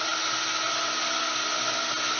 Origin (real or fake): real